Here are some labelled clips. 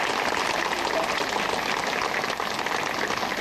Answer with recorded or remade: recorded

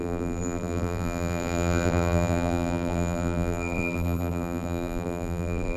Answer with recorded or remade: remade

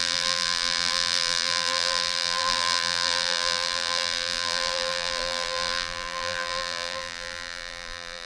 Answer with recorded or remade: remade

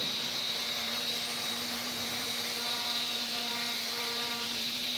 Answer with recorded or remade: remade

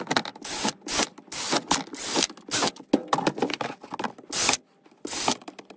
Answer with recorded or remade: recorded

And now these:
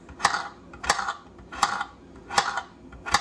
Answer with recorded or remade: remade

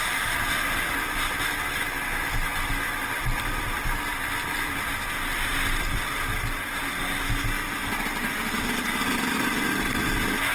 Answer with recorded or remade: recorded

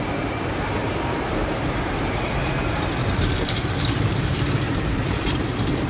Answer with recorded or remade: remade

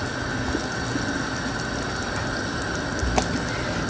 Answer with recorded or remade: recorded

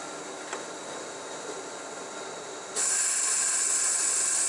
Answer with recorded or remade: recorded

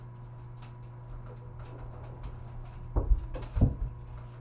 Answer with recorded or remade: recorded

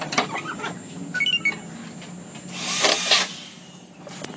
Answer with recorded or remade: recorded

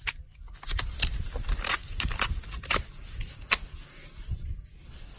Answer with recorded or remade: recorded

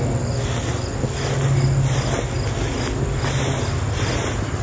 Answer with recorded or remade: recorded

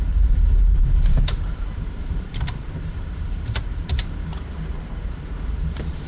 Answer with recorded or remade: remade